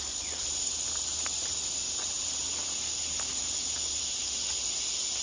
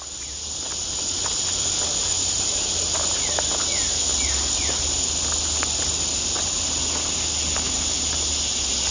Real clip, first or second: second